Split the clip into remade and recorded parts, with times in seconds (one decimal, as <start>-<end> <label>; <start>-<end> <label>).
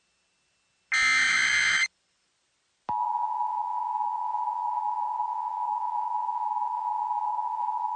0.0-3.0 recorded; 3.0-8.0 remade